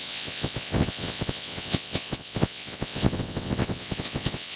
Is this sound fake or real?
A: fake